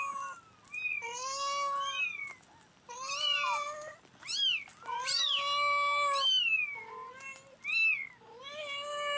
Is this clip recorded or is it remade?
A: recorded